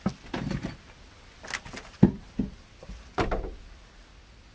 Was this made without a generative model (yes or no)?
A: yes